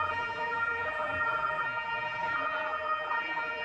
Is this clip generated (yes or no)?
yes